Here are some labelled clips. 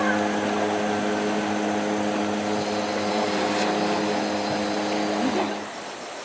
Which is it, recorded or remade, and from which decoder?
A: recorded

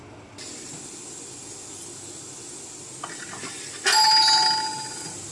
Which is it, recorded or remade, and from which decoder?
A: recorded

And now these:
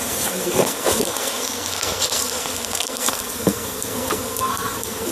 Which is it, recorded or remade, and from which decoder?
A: remade, codec, SNAC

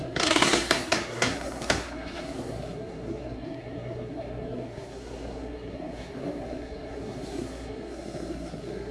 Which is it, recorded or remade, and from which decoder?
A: remade, codec, SNAC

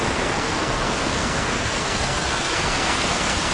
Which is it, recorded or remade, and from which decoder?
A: remade, codec, SNAC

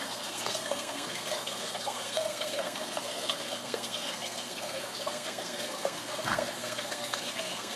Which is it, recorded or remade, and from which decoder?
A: remade, codec, SNAC